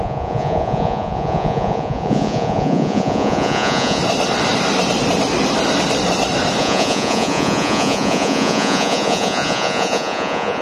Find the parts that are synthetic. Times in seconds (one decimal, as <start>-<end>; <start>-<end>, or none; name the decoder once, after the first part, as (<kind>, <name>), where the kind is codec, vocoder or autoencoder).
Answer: 0.0-4.0 (vocoder, Vocos); 6.6-10.6